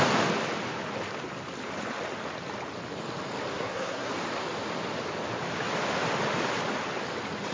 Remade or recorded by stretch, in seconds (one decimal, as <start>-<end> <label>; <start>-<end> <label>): 0.0-3.5 recorded; 3.5-4.1 remade; 4.1-7.5 recorded